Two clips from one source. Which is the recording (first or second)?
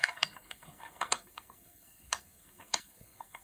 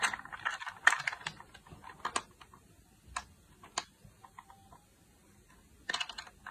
second